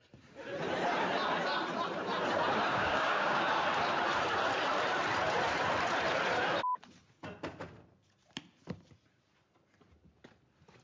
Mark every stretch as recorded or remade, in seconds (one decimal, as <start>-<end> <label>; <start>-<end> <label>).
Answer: 0.0-2.7 recorded; 2.7-3.5 remade; 3.5-10.8 recorded